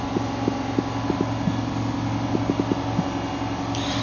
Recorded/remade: recorded